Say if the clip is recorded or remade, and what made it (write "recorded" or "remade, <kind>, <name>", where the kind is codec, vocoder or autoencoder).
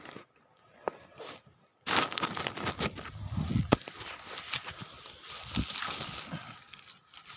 recorded